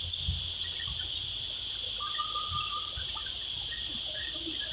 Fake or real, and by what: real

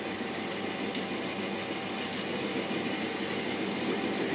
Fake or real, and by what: real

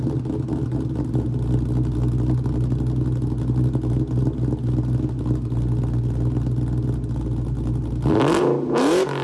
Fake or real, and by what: real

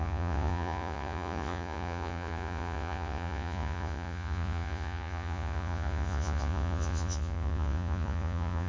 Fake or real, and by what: fake, vocoder, Vocos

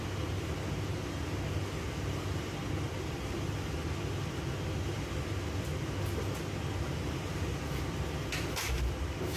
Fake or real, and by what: real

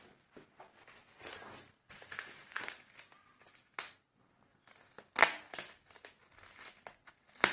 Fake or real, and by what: real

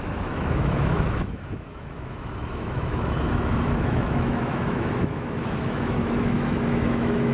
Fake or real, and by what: fake, autoencoder, DAC-VAE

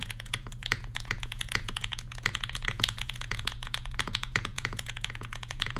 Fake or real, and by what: fake, vocoder, Vocos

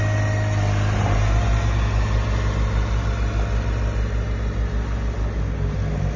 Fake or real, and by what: real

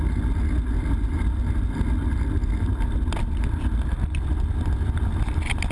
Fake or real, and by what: real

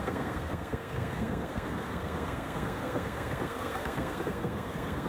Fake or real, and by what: fake, codec, SNAC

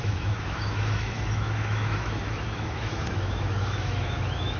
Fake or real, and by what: fake, autoencoder, DAC-VAE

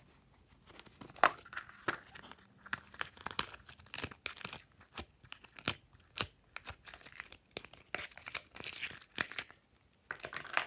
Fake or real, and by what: real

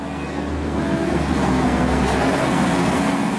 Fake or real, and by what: fake, codec, SNAC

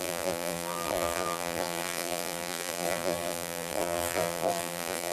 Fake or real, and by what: fake, vocoder, BigVGAN v2